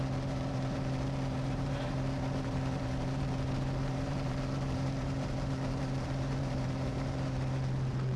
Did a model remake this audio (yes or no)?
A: yes